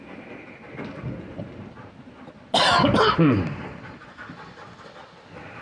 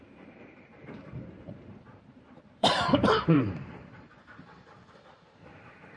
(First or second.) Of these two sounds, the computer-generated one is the second